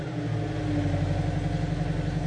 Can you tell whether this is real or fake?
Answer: real